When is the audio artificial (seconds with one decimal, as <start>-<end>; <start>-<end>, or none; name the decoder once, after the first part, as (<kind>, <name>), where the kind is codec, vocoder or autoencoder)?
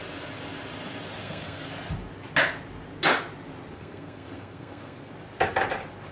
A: 1.2-1.7 (codec, SNAC); 3.7-5.1